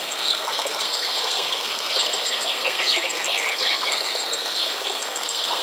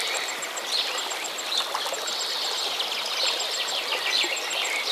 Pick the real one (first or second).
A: second